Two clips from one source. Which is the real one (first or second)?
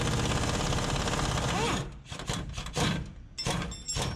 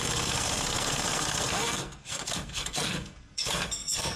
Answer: first